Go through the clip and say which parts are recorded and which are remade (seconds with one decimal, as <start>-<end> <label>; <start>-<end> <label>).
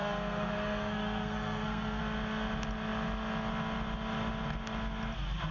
0.0-2.0 remade; 2.0-5.5 recorded